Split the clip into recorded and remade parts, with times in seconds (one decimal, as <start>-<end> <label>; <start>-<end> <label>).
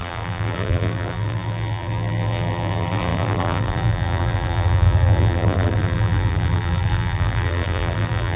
0.0-8.4 remade